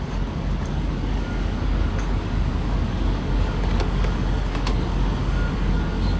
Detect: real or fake fake